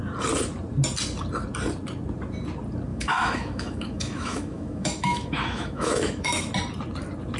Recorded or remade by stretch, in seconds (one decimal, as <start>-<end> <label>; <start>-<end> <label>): 0.0-2.9 recorded; 2.9-6.5 remade; 6.5-7.4 recorded